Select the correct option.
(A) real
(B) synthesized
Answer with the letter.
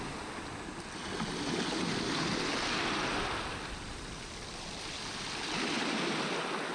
A